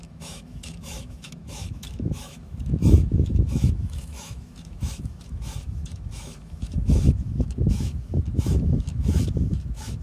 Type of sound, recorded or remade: remade